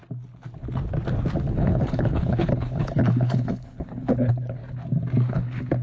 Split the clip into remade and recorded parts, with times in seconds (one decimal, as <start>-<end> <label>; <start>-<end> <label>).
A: 0.0-1.5 recorded; 1.5-4.6 remade; 4.6-5.3 recorded; 5.3-5.8 remade